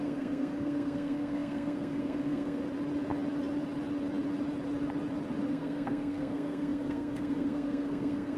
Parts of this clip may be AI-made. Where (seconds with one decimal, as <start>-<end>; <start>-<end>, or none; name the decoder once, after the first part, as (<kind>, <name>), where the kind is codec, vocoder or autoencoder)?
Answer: 0.0-2.6 (codec, SNAC); 5.5-8.4